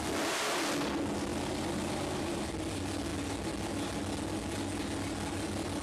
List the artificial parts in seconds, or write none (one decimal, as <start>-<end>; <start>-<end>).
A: 1.3-2.5